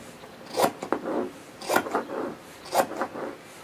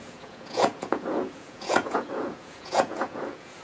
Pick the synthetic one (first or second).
second